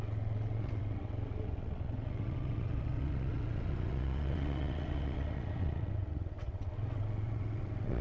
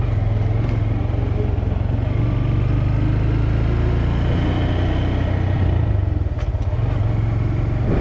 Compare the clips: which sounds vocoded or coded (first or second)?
first